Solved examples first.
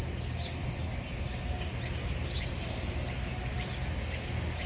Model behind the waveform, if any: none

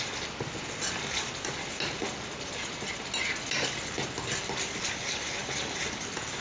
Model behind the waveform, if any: none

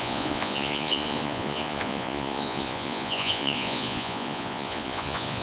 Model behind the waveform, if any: vocoder, Vocos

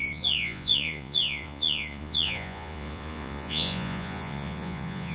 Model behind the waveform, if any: vocoder, Vocos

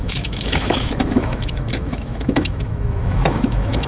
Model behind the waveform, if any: autoencoder, DAC-VAE